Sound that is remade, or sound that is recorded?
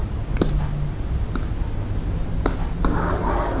recorded